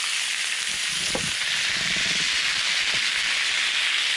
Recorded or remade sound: recorded